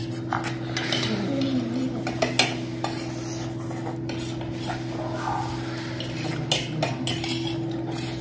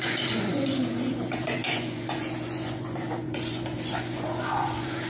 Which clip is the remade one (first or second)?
second